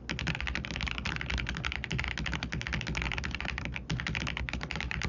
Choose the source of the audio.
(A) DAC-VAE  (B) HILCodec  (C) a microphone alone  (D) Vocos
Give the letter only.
C